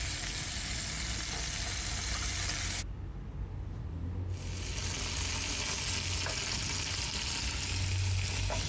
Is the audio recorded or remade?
recorded